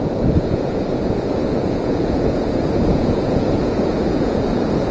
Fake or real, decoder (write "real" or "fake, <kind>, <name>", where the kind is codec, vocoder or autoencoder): fake, vocoder, Vocos